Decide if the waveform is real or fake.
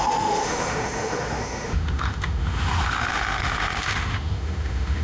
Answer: fake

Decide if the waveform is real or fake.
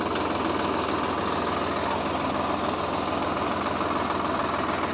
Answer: real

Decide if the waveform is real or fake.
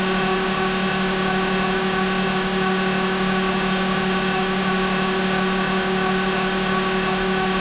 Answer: fake